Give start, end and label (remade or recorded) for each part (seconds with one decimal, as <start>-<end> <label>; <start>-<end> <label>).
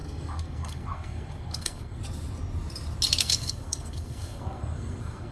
0.0-2.0 remade; 2.0-3.2 recorded; 3.2-5.3 remade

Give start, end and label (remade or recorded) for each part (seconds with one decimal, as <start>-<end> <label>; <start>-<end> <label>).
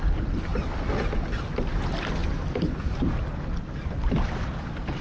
0.0-5.0 recorded